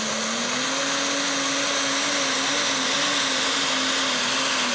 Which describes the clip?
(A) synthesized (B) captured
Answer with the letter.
B